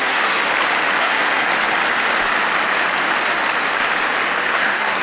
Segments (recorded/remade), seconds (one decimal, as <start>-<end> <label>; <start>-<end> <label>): 0.0-0.4 remade; 0.4-1.0 recorded; 1.0-1.5 remade; 1.5-4.5 recorded; 4.5-5.0 remade